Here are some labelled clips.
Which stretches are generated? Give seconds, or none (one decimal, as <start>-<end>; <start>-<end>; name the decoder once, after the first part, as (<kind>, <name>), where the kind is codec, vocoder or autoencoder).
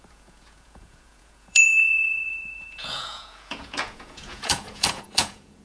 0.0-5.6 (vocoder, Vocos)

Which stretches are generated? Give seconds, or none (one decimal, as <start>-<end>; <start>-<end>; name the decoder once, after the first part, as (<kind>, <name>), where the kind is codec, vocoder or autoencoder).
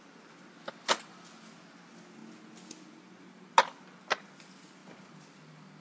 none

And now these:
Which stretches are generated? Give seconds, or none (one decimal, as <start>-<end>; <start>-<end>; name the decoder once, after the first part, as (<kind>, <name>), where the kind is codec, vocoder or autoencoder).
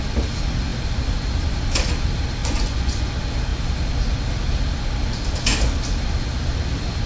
2.4-3.1 (vocoder, Vocos)